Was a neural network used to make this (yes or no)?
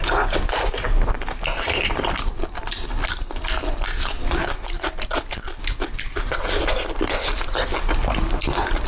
no